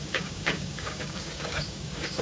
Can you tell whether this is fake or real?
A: fake